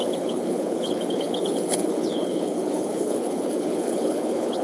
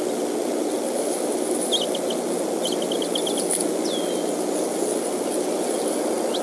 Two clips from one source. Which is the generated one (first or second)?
first